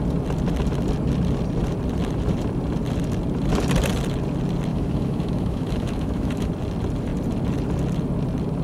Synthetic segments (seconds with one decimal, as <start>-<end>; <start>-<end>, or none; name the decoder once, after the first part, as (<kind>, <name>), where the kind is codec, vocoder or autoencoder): 4.7-6.5 (autoencoder, DAC-VAE)

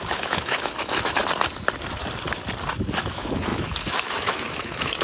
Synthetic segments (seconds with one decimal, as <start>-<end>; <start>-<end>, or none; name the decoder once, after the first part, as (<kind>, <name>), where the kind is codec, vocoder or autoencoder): 0.0-1.2 (autoencoder, DAC-VAE); 3.0-5.0

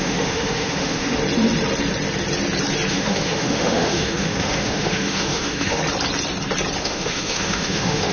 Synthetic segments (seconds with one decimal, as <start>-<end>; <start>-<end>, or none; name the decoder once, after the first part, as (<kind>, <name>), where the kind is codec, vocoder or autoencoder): 0.0-1.2 (autoencoder, DAC-VAE); 2.9-5.8; 6.8-8.1

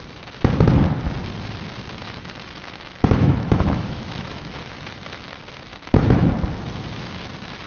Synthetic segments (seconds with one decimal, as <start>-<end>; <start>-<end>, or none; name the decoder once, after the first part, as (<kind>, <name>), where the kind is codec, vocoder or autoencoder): 2.0-5.3 (autoencoder, DAC-VAE); 5.7-6.3

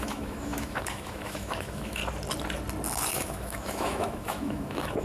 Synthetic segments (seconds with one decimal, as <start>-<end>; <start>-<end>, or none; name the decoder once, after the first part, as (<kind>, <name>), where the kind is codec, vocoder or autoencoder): 0.0-2.0 (autoencoder, DAC-VAE); 3.1-5.0

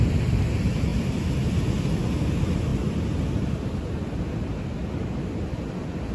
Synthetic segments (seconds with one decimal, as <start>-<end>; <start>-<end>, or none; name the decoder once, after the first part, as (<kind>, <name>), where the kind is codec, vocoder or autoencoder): none

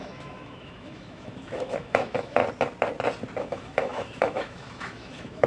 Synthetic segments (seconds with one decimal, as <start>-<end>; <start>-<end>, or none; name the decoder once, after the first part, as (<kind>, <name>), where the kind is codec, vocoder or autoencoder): 0.0-2.4 (autoencoder, DAC-VAE); 3.4-5.5

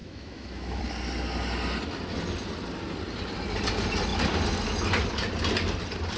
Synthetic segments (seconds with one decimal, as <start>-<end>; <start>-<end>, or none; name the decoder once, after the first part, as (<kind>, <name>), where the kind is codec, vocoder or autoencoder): 0.0-0.8 (autoencoder, DAC-VAE)